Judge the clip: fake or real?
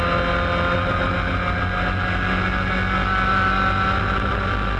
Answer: real